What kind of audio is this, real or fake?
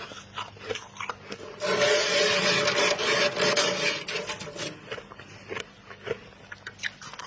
real